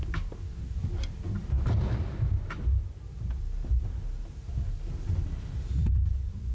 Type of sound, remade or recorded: recorded